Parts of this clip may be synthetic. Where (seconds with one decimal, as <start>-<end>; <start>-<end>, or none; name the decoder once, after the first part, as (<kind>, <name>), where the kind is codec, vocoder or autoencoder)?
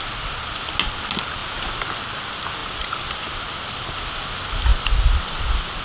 none